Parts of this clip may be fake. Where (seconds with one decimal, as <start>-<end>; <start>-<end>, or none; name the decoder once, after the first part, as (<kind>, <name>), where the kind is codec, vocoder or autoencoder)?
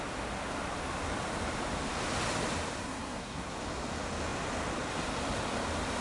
2.8-3.5 (codec, SNAC)